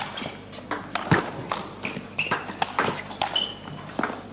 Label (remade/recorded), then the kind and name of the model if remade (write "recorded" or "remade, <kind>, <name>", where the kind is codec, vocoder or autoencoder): recorded